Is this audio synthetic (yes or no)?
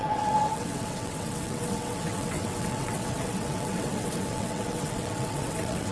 yes